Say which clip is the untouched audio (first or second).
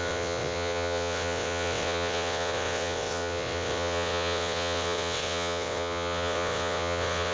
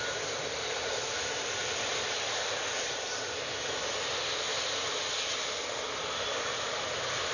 second